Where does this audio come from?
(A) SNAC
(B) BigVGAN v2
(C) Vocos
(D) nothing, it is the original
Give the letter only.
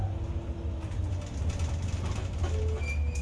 D